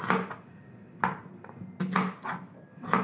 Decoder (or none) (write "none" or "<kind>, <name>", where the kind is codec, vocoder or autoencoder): none